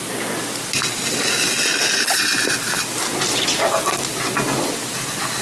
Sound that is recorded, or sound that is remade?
recorded